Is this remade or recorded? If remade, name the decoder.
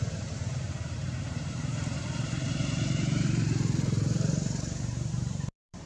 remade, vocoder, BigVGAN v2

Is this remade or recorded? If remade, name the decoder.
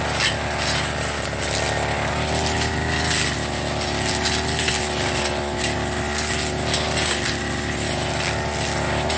recorded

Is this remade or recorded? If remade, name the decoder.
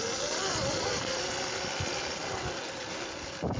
recorded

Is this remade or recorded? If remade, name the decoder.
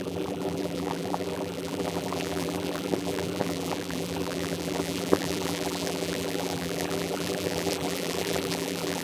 remade, vocoder, BigVGAN v2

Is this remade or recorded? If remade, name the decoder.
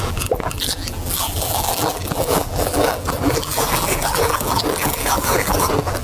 remade, vocoder, BigVGAN v2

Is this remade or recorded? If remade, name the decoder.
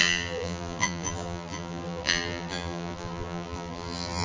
remade, vocoder, BigVGAN v2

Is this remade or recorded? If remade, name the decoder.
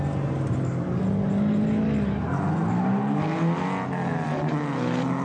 recorded